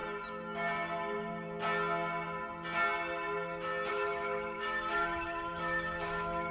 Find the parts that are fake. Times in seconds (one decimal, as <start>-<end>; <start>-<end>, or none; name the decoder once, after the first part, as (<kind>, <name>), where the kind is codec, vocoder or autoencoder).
3.9-6.5 (autoencoder, DAC-VAE)